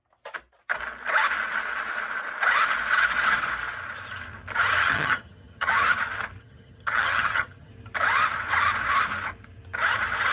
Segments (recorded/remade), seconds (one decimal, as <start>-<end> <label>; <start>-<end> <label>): 0.0-4.8 recorded; 4.8-5.7 remade; 5.7-6.4 recorded; 6.4-7.7 remade; 7.7-10.3 recorded